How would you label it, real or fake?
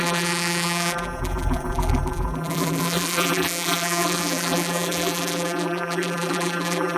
fake